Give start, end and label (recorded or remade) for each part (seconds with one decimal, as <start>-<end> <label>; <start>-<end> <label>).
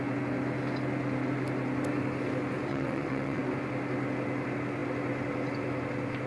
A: 0.0-2.7 recorded; 2.7-3.4 remade; 3.4-6.3 recorded